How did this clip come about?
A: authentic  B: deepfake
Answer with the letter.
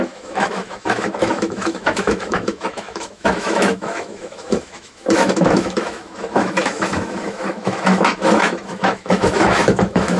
B